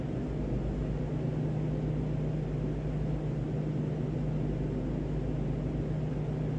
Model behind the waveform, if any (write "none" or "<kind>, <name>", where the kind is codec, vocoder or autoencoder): none